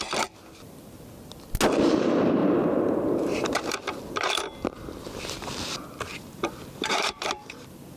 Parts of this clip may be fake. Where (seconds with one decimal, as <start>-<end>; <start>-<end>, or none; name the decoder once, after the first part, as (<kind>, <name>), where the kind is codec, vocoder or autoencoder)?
2.4-4.0 (vocoder, BigVGAN v2); 6.1-7.3